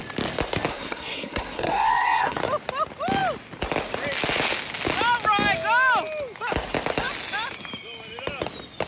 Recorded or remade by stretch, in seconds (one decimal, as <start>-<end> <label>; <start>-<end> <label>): 0.0-0.7 recorded; 0.7-2.4 remade; 2.4-8.9 recorded